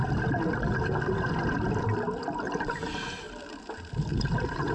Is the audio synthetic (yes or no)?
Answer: no